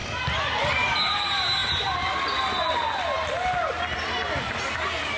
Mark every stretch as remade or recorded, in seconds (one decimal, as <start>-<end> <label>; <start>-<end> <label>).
0.0-5.2 recorded